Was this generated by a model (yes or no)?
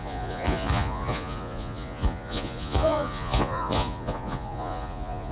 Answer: yes